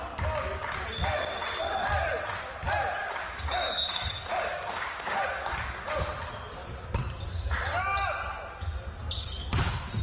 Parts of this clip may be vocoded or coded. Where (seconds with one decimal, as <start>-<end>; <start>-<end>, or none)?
3.0-5.9